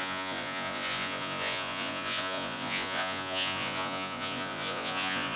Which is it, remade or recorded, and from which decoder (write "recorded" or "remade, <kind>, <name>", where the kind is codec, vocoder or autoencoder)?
remade, vocoder, Vocos